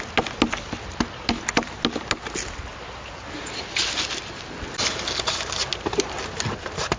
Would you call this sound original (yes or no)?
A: yes